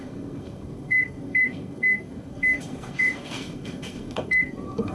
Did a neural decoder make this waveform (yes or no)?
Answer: yes